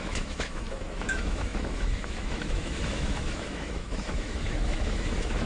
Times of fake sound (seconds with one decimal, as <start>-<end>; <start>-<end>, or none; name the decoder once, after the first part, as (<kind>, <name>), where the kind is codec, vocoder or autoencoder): 0.0-5.5 (autoencoder, DAC-VAE)